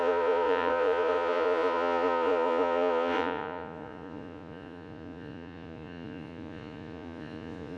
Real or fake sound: fake